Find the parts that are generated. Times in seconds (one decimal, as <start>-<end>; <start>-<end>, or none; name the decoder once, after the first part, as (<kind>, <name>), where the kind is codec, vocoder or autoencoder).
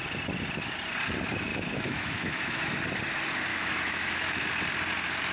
1.5-2.7 (autoencoder, DAC-VAE); 3.5-4.5